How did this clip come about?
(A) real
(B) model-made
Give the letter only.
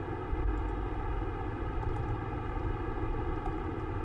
A